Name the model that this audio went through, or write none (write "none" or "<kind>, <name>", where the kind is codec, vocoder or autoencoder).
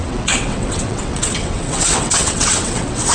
vocoder, WaveNeXt